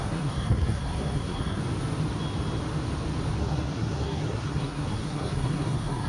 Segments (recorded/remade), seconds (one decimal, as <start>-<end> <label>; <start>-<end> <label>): 0.0-1.6 remade; 1.6-3.4 recorded; 3.4-6.1 remade